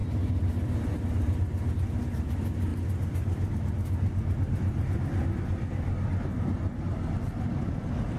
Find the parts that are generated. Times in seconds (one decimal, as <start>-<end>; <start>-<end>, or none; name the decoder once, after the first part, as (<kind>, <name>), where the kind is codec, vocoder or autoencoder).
none